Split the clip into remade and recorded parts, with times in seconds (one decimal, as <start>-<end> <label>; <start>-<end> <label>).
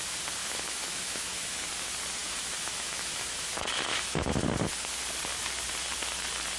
0.0-0.4 recorded; 0.4-1.7 remade; 1.7-2.2 recorded; 2.2-3.5 remade; 3.5-3.9 recorded; 3.9-4.4 remade; 4.4-6.6 recorded